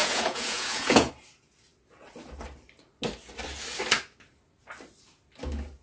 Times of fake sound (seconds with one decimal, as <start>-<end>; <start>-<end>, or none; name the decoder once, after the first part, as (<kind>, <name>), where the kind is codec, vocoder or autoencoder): 0.0-1.1 (vocoder, Vocos)